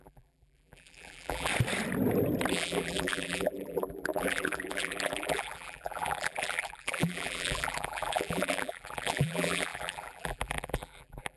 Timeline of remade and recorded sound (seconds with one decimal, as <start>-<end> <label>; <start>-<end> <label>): 0.0-1.5 remade; 1.5-2.5 recorded; 2.5-11.4 remade